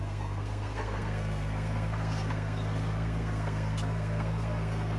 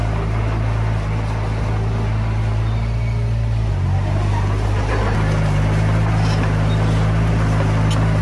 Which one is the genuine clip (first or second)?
second